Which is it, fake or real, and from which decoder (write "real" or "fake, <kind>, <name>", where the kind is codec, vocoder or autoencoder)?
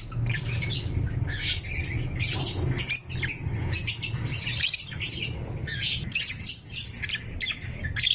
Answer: real